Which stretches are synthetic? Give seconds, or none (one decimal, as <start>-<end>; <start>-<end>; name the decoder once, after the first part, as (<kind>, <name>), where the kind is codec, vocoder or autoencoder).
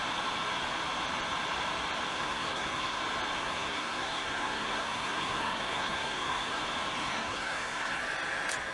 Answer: 2.1-3.0 (codec, SNAC); 3.4-6.6; 7.0-8.0